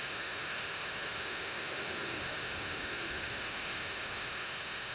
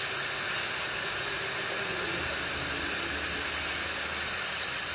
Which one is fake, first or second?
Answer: first